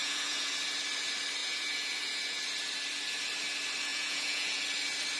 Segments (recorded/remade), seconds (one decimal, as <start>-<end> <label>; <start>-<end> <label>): 0.0-0.5 remade; 0.5-1.4 recorded; 1.4-2.4 remade; 2.4-3.9 recorded; 3.9-4.6 remade; 4.6-5.2 recorded